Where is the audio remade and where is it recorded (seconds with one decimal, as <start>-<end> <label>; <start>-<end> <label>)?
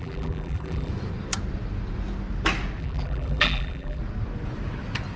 0.0-0.9 remade; 0.9-2.8 recorded; 2.8-4.0 remade; 4.0-5.2 recorded